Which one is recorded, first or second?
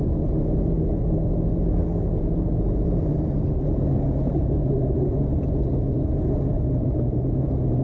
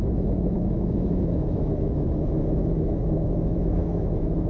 first